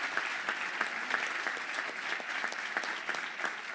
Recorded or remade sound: recorded